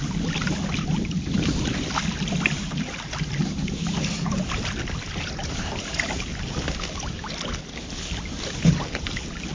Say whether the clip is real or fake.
real